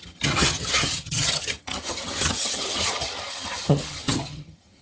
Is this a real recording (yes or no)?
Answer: no